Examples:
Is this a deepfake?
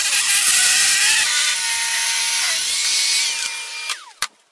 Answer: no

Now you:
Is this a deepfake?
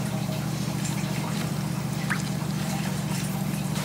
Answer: yes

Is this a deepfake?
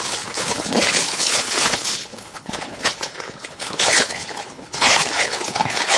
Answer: yes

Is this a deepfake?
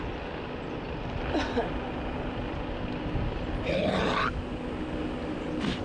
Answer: no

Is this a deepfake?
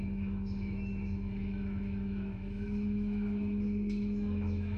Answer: yes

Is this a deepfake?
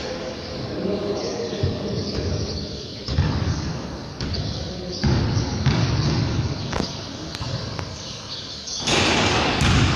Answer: yes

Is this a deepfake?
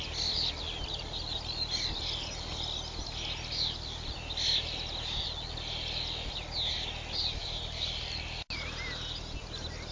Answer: no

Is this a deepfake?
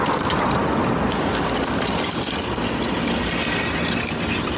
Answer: no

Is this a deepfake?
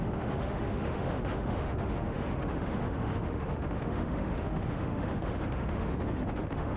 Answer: yes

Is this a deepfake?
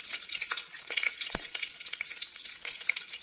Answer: yes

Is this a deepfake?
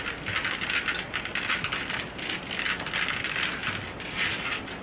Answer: no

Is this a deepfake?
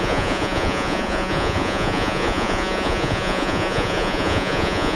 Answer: yes